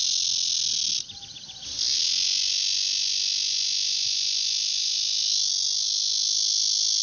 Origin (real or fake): real